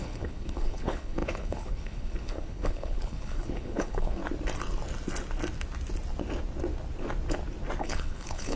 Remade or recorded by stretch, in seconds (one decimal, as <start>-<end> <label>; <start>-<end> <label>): 0.0-4.2 remade; 4.2-7.8 recorded; 7.8-8.6 remade